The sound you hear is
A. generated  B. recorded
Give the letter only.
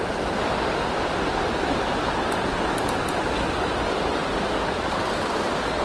B